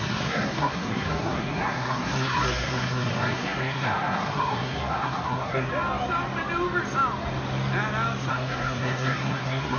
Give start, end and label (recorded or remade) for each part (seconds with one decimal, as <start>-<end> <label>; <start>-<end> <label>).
0.0-5.7 remade; 5.7-8.3 recorded; 8.3-9.8 remade